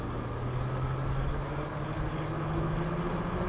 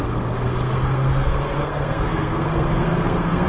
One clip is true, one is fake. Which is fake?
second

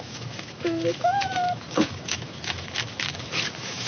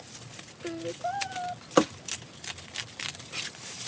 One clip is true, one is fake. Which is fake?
first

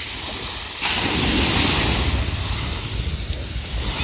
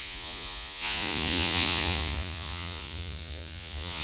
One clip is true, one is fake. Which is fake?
second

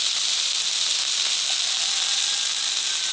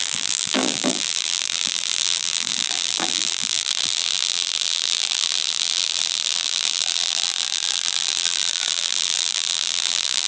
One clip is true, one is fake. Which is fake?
second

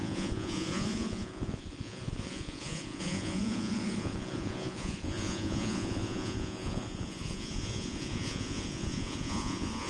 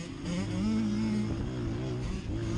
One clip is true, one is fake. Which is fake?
first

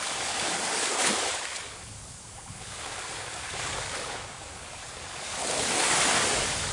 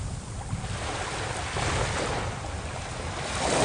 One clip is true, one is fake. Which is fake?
first